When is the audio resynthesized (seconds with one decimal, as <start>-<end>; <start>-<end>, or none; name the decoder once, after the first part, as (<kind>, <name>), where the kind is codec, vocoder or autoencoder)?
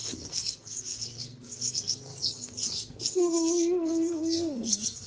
0.0-5.1 (codec, SNAC)